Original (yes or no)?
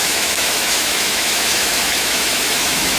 no